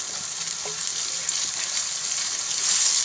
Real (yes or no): yes